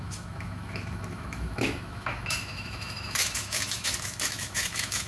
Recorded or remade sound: remade